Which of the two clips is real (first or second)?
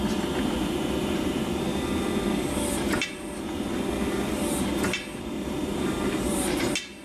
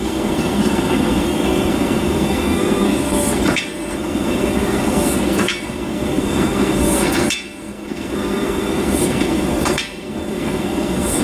first